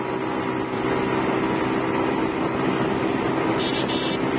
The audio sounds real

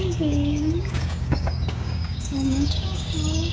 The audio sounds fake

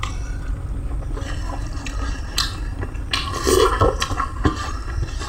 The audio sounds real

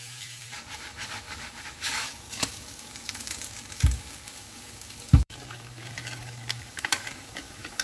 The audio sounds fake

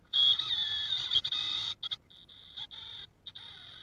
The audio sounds real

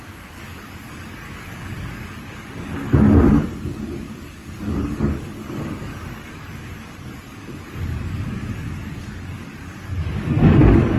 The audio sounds fake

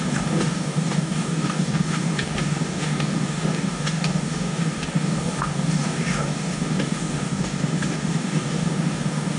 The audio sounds fake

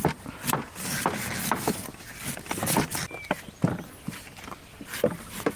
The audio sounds real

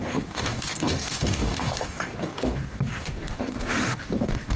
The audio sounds fake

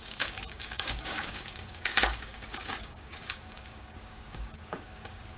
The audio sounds fake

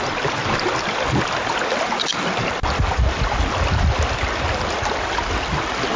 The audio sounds real